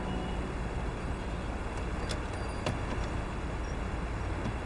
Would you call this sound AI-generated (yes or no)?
no